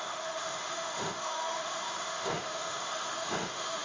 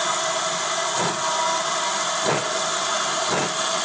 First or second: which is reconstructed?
first